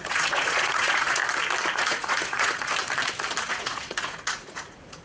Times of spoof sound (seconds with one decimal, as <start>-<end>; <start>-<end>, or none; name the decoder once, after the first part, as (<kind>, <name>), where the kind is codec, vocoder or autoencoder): 0.0-1.2 (vocoder, Vocos); 1.7-2.7; 3.4-5.0